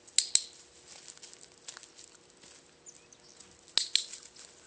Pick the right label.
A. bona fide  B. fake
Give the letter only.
A